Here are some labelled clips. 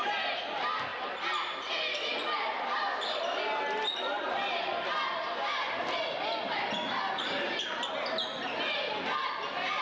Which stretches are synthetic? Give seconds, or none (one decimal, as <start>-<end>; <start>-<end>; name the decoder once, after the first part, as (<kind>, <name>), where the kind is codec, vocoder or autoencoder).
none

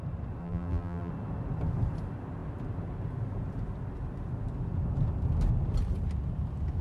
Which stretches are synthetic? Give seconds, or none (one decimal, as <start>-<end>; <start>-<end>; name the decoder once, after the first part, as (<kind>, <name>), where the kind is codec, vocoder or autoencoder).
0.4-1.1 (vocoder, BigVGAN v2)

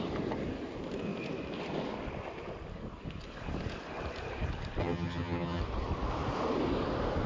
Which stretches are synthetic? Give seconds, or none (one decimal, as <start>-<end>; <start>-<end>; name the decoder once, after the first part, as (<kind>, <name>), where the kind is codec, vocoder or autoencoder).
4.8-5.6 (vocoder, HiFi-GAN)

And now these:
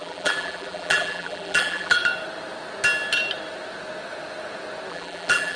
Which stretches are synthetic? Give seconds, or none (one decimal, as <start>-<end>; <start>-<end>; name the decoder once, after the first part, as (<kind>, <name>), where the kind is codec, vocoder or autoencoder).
0.0-2.0 (vocoder, BigVGAN v2); 4.9-5.6